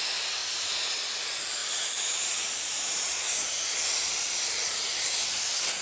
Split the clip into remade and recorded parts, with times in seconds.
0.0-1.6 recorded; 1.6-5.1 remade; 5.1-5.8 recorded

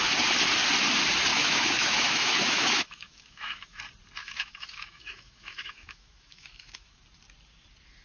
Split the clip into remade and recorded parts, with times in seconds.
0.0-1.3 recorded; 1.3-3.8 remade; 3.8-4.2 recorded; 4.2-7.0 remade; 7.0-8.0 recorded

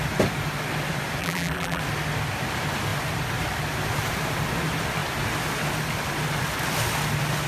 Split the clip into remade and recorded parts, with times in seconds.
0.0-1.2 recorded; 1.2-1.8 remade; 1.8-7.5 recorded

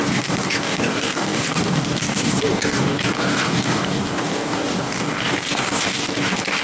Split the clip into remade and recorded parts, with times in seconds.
0.0-6.6 remade